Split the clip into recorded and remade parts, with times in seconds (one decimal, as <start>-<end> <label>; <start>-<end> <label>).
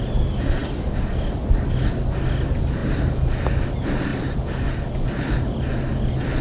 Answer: 0.0-6.4 recorded